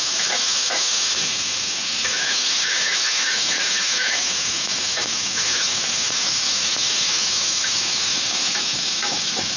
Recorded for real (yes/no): no